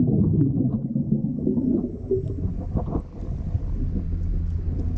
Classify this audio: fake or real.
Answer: real